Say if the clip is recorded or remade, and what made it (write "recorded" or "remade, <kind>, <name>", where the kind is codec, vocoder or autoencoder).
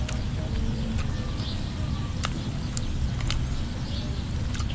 recorded